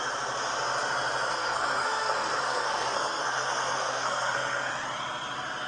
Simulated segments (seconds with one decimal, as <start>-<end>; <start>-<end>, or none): 1.3-4.7